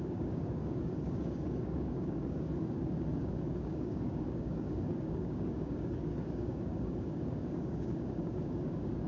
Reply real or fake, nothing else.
fake